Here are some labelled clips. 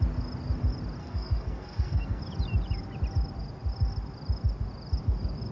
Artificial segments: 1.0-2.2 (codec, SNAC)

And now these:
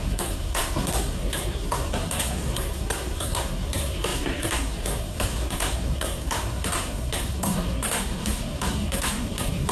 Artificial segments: 0.0-9.7 (codec, SNAC)

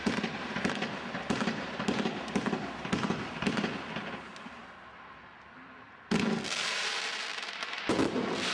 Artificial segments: none

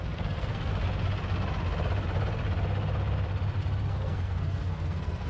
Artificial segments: 0.0-0.7 (codec, SNAC); 3.9-5.3

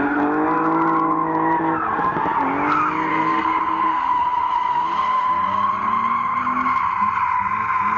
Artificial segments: 3.1-3.6 (codec, SNAC)